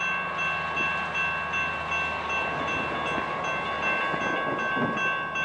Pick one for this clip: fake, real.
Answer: real